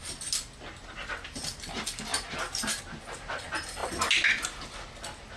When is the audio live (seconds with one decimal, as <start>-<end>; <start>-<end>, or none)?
0.0-2.1; 2.8-5.4